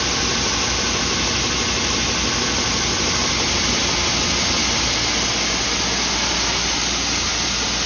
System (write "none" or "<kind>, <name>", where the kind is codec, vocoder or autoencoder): none